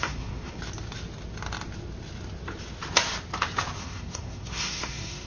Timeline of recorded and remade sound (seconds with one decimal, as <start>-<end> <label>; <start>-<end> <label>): 0.0-0.6 remade; 0.6-3.8 recorded; 3.8-5.3 remade

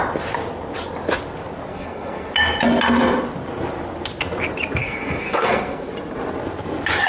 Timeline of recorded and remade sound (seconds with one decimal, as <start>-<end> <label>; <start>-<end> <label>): 0.0-1.7 recorded; 1.7-2.3 remade; 2.3-4.8 recorded; 4.8-5.9 remade; 5.9-7.1 recorded